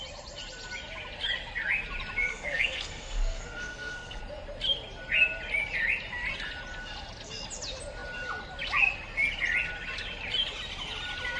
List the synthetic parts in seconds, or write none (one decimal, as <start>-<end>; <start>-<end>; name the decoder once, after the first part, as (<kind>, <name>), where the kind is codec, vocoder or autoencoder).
2.3-4.2 (codec, SNAC)